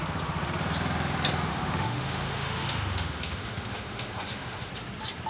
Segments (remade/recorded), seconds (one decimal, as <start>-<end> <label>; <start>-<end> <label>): 0.0-1.5 recorded; 1.5-4.7 remade; 4.7-5.3 recorded

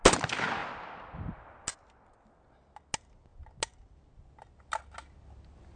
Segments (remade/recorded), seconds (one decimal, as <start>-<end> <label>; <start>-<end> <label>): 0.0-5.8 recorded

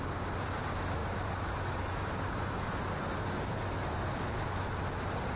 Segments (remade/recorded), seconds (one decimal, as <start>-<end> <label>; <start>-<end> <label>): 0.0-1.0 recorded; 1.0-2.1 remade; 2.1-5.4 recorded

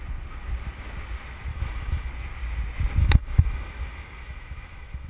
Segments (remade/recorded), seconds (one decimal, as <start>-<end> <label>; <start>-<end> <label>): 0.0-1.5 recorded; 1.5-2.1 remade; 2.1-3.0 recorded; 3.0-5.1 remade

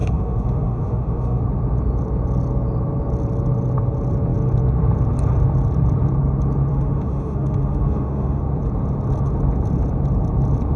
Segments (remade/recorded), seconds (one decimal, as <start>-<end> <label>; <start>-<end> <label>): 0.0-1.4 remade; 1.4-6.7 recorded; 6.7-8.4 remade; 8.4-10.8 recorded

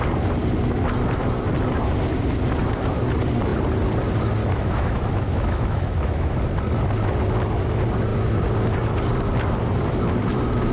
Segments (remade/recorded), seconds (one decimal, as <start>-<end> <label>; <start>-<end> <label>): 0.0-4.4 recorded; 4.4-6.4 remade; 6.4-10.7 recorded

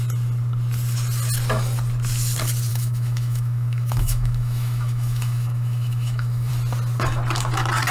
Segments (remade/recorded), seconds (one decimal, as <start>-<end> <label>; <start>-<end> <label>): 0.0-2.7 recorded; 2.7-6.5 remade; 6.5-7.9 recorded